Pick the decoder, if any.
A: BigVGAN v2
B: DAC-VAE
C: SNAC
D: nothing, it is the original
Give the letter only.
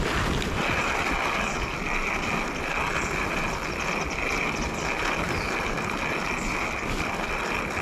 D